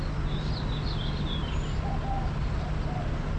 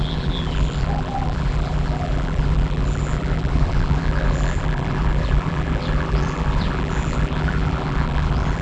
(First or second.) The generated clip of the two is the second